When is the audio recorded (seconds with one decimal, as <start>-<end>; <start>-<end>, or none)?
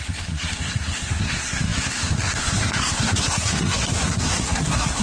none